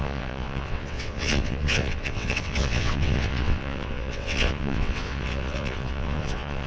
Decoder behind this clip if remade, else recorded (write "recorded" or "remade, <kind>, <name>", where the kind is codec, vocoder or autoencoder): remade, vocoder, WaveNeXt